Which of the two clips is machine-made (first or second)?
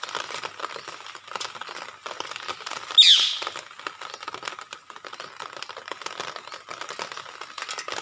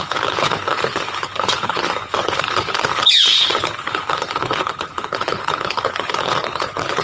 second